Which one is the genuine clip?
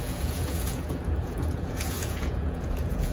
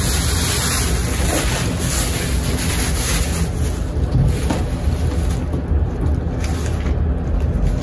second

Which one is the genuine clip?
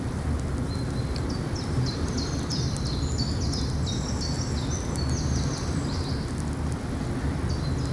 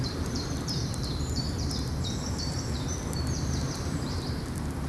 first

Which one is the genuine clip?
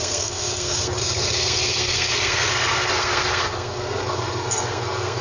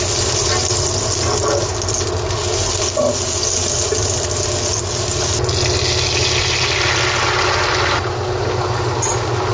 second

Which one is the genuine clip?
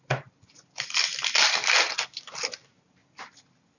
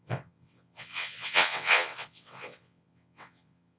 first